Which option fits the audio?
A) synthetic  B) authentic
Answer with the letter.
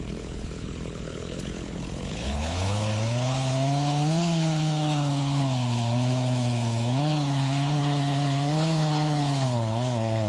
A